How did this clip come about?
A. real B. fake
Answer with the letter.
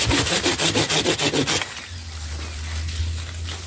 A